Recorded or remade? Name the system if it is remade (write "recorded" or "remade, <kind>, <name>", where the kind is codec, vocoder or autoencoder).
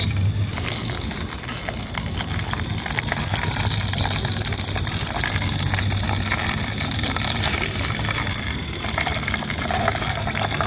recorded